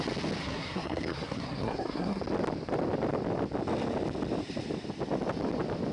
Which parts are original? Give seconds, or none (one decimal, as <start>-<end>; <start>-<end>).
0.0-0.4; 2.2-5.9